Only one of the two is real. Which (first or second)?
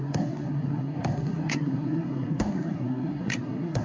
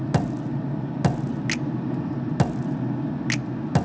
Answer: second